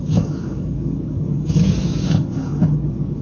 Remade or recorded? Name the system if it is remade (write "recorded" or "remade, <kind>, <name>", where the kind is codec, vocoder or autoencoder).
remade, codec, DAC